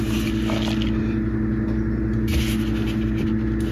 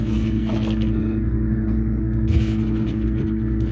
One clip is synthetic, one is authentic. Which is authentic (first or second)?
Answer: first